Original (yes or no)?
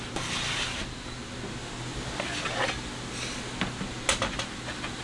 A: yes